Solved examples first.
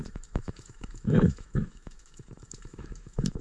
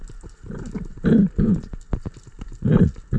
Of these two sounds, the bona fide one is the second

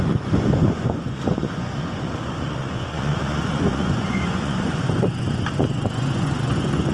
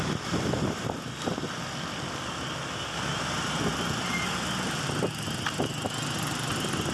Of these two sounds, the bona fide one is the second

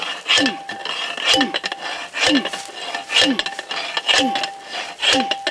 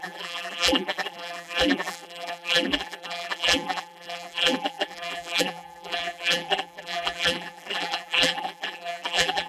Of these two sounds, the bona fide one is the first